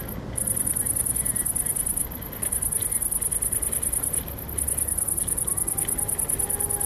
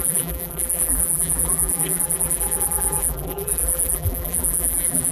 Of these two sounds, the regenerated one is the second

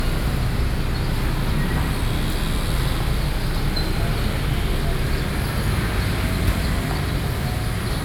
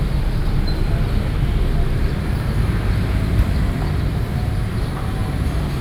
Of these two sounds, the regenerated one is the second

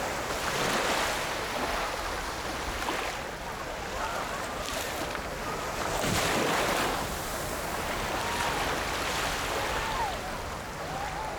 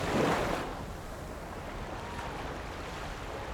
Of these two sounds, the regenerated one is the second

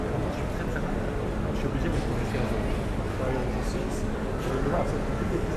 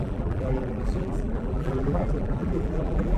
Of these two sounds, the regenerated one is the second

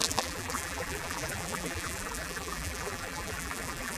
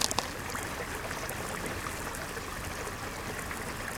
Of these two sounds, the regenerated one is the first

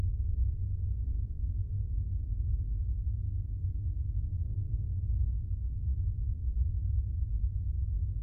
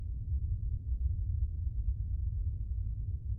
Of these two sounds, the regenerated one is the second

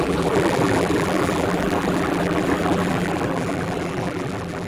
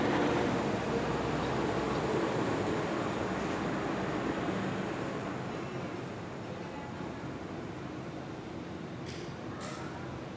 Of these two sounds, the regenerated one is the first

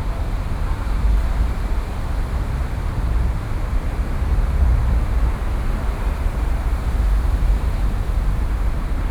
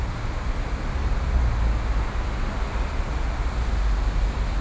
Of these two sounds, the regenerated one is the first